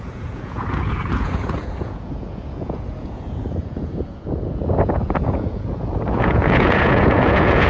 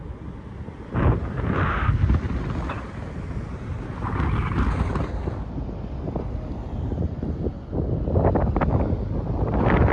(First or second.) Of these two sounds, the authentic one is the second